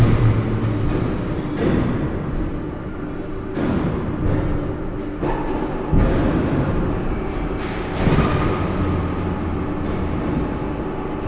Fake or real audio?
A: real